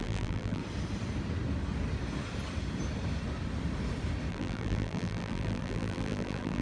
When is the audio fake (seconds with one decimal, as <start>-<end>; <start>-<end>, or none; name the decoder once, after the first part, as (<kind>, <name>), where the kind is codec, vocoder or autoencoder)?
0.0-0.6 (vocoder, BigVGAN v2); 4.3-6.6